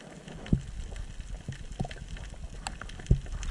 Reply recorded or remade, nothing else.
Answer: recorded